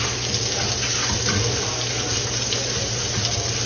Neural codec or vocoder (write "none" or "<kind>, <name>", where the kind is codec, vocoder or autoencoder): none